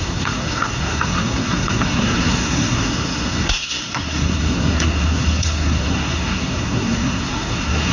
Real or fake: fake